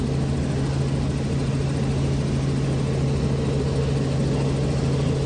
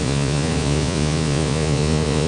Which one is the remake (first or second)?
second